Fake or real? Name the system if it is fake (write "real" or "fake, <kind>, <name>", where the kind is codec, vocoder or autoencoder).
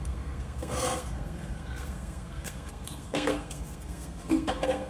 fake, codec, SNAC